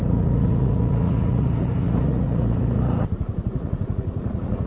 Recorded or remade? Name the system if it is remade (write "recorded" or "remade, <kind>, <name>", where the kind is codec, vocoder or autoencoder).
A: remade, vocoder, Vocos